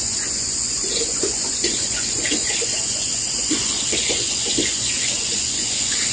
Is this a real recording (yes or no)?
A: no